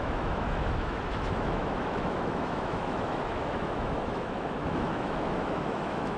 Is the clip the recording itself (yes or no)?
no